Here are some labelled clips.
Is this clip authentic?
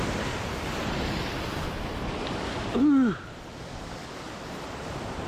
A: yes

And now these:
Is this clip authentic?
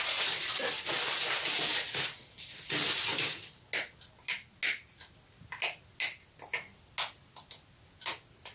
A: yes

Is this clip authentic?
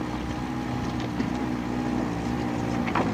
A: yes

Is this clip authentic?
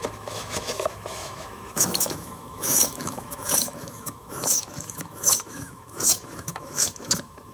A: no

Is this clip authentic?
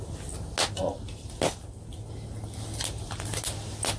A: yes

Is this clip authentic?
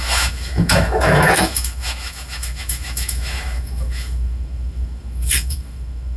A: no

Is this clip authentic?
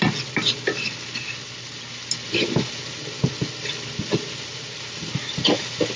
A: yes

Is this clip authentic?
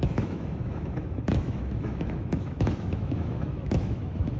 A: no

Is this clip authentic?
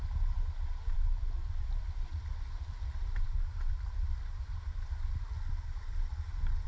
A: yes